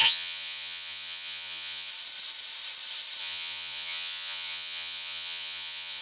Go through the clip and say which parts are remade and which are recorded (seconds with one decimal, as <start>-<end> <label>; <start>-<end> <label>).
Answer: 0.0-1.9 remade; 1.9-3.2 recorded; 3.2-6.0 remade